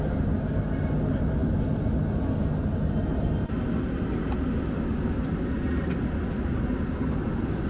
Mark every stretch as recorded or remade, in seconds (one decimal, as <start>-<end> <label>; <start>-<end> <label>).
0.0-7.7 recorded